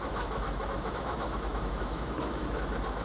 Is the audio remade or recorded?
remade